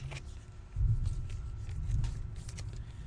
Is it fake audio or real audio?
real